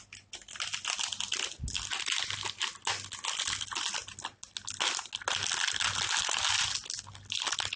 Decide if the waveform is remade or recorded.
recorded